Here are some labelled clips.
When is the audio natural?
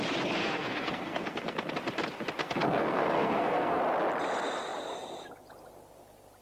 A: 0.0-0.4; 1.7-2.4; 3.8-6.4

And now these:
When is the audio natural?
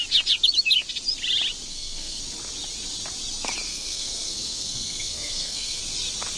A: 0.0-1.7; 2.2-3.7; 5.8-6.4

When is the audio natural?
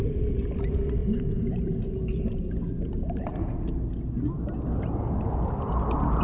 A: 0.0-6.2